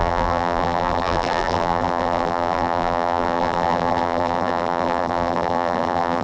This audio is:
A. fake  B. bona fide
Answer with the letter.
A